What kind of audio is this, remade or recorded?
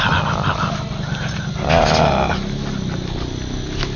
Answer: recorded